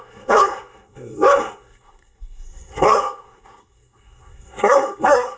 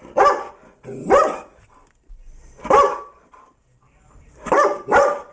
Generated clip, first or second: first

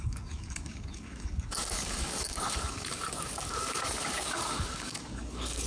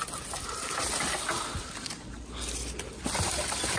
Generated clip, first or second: first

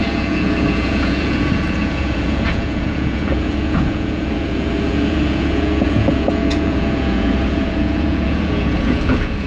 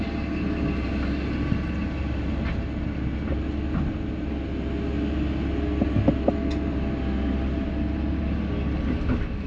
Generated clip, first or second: first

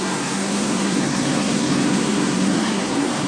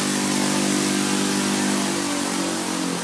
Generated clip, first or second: first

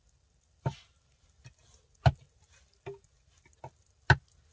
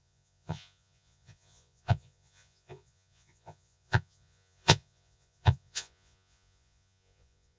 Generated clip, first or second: second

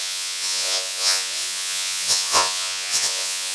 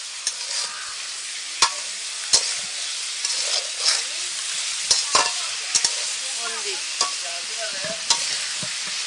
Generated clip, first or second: first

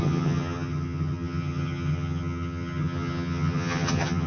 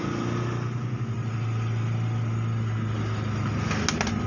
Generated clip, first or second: first